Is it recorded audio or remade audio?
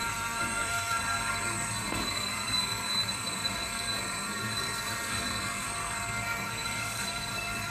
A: remade